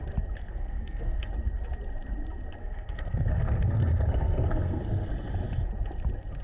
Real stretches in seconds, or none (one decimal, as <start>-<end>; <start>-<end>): 0.0-0.4; 1.3-2.6; 5.1-6.4